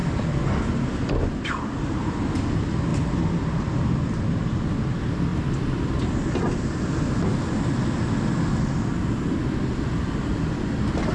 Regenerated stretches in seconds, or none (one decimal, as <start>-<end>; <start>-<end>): 2.9-4.2; 5.3-6.0